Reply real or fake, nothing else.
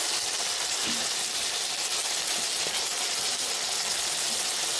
real